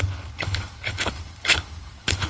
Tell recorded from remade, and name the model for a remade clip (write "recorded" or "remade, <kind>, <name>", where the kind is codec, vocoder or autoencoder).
remade, codec, HILCodec